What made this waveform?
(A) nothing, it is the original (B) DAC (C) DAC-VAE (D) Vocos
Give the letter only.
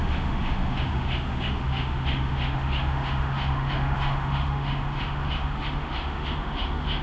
C